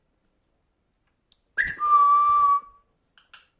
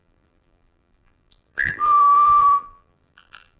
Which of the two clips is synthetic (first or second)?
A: second